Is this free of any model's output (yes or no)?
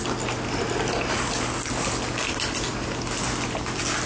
yes